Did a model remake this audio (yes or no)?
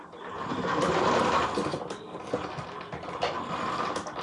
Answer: yes